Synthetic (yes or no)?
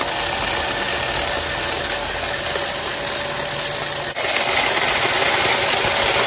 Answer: no